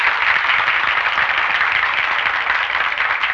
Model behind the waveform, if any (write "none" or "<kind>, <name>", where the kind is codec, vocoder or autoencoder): none